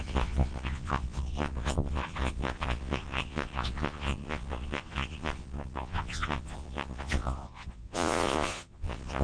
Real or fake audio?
fake